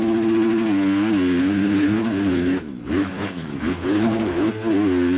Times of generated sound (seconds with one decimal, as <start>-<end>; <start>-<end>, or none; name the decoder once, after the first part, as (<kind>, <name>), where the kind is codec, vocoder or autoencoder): 1.4-4.5 (codec, HILCodec)

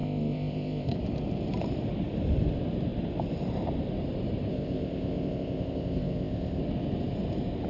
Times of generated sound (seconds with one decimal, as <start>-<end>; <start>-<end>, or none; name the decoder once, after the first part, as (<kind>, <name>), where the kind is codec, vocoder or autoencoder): 0.0-1.0 (codec, ZipCodec); 4.5-6.6

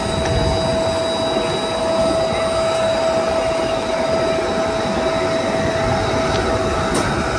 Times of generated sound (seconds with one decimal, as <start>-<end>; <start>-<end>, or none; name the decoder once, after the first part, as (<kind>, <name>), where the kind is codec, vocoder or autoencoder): none